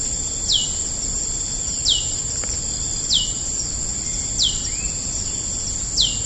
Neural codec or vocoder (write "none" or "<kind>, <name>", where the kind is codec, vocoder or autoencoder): none